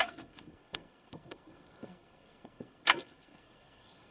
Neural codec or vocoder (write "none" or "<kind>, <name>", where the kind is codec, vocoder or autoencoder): codec, SNAC